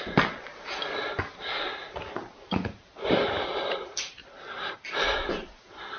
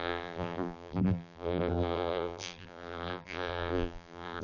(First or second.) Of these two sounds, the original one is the first